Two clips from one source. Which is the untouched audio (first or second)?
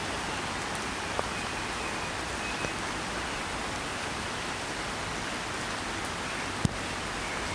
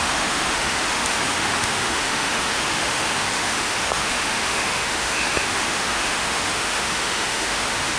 first